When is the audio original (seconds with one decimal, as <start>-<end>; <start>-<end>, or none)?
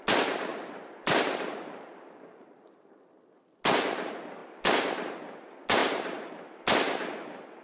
0.0-0.5; 2.9-5.8; 6.4-7.6